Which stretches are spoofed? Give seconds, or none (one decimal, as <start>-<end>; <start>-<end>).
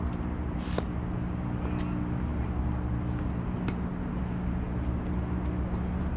none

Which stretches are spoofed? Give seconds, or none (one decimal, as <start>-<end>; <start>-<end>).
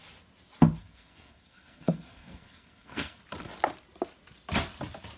0.8-3.2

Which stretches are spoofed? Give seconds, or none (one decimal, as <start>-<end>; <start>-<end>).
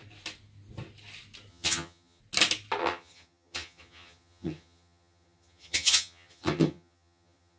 1.5-2.2; 2.8-7.6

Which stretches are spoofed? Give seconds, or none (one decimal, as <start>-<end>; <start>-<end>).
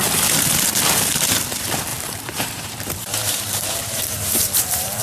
1.9-5.0